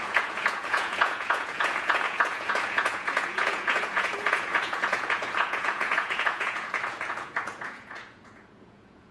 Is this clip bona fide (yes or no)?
no